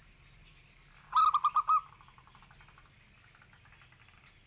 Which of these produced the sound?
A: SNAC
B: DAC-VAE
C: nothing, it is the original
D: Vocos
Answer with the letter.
C